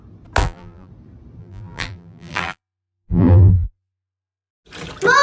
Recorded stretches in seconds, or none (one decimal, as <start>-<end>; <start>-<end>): 0.0-0.4; 0.9-1.4; 4.5-5.2